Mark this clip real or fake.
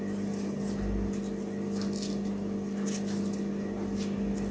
real